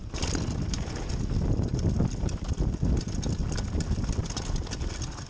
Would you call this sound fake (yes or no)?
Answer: no